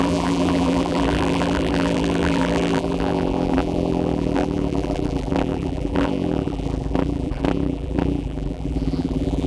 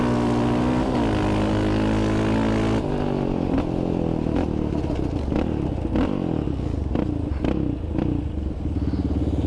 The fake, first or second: first